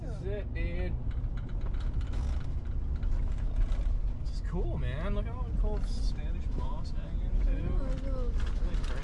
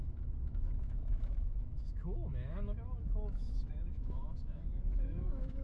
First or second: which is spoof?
second